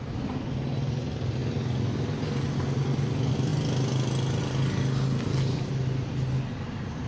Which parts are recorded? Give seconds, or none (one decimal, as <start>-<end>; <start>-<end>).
0.0-7.1